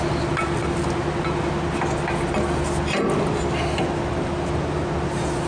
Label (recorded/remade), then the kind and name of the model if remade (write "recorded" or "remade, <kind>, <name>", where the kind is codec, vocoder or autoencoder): recorded